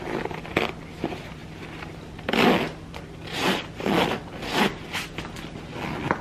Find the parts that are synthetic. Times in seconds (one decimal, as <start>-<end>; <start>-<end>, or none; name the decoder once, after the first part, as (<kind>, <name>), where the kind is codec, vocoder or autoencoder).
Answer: none